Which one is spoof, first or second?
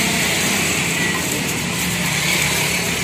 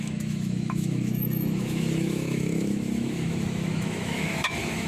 second